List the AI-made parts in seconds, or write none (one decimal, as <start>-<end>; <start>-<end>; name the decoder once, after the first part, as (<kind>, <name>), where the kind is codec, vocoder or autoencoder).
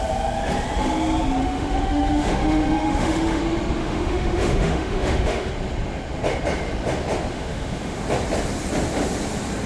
1.4-3.4 (autoencoder, DAC-VAE); 3.8-5.5; 7.3-8.0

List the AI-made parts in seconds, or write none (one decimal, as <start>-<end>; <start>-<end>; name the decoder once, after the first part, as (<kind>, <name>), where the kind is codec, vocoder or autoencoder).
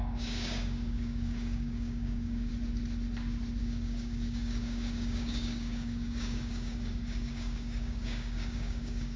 0.0-2.5 (codec, DAC); 3.6-9.2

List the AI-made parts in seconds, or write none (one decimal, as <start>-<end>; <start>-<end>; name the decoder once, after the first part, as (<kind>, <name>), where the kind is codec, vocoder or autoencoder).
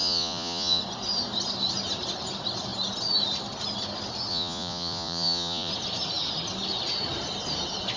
0.0-0.8 (vocoder, Vocos); 4.3-5.7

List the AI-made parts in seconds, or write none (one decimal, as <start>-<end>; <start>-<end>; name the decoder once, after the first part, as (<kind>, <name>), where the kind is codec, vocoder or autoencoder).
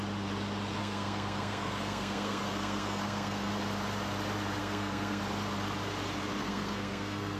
0.8-3.5 (codec, SNAC); 4.6-5.2; 6.4-7.4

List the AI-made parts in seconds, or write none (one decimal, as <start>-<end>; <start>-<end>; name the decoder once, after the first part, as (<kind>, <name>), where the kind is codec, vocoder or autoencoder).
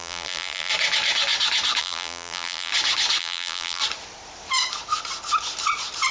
0.0-0.7 (vocoder, BigVGAN v2); 1.8-2.7; 3.2-3.8